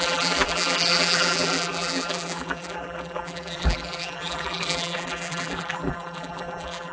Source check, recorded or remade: remade